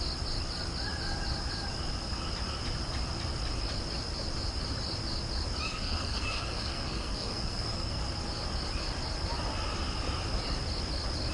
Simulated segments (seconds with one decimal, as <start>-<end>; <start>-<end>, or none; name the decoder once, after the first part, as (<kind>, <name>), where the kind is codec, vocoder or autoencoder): 5.7-8.0 (codec, SNAC)